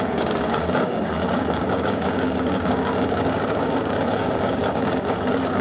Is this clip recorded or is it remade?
remade